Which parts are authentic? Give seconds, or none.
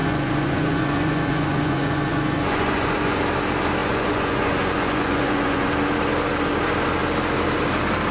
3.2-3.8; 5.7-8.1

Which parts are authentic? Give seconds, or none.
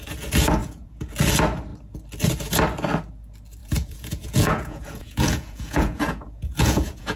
0.0-0.6; 1.1-3.6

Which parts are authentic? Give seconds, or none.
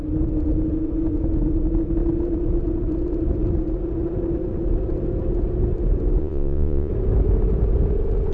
0.0-6.2; 6.9-8.3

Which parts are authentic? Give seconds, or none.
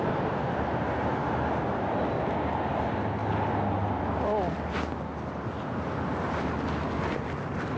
0.0-7.8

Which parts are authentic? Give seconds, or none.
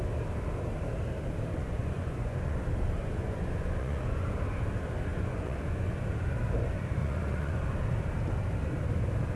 0.0-1.5; 2.6-3.0; 4.3-5.1; 5.9-7.0; 7.6-9.4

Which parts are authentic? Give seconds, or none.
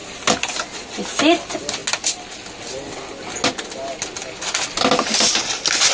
0.0-5.9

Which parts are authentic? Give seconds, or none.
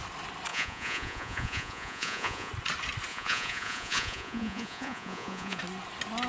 0.0-0.5; 2.5-3.1; 5.6-6.3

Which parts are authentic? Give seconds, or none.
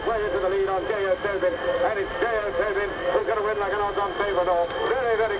0.0-5.4